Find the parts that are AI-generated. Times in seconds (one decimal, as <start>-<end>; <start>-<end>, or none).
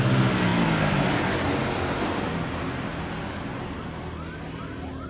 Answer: none